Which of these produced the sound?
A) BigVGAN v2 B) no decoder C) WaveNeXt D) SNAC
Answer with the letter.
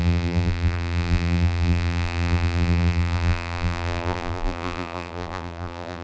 A